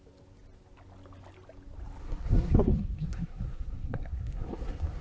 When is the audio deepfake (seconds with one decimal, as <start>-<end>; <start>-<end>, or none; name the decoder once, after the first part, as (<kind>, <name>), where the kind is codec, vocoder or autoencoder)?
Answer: 2.0-5.0 (codec, SNAC)